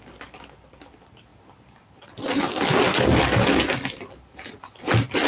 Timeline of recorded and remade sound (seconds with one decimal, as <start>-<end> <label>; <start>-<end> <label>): 0.0-5.3 recorded